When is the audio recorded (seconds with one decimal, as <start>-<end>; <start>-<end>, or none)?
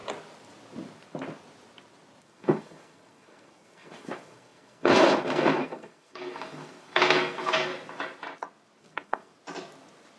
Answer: 0.0-2.2; 7.7-8.8; 9.3-10.2